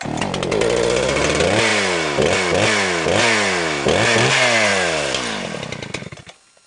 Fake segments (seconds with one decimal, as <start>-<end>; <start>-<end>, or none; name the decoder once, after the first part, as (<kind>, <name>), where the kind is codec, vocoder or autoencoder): none